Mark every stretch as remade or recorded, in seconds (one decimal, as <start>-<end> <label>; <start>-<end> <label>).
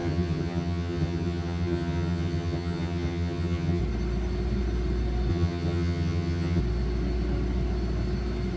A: 0.0-3.8 remade; 3.8-5.3 recorded; 5.3-6.6 remade; 6.6-8.6 recorded